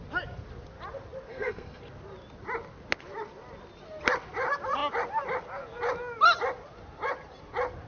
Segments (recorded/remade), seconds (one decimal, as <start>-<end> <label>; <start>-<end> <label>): 0.0-1.3 recorded; 1.3-1.8 remade; 1.8-7.9 recorded